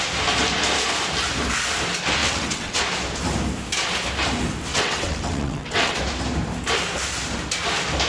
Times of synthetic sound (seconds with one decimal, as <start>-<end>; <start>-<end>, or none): 2.2-2.8; 4.7-6.0